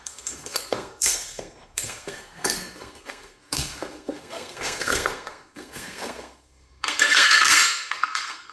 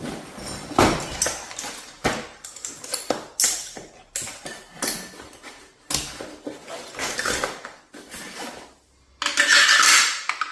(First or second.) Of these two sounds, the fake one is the first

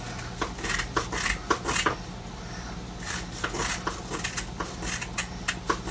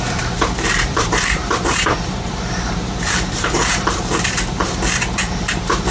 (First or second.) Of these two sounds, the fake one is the second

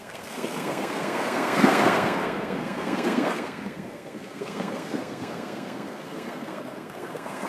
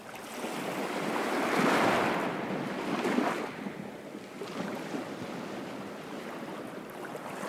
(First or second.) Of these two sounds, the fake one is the first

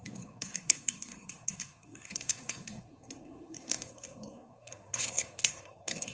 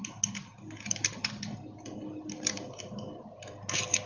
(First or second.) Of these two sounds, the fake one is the first